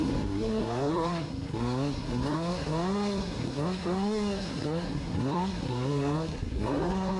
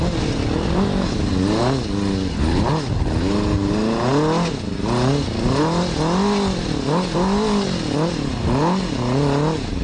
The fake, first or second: first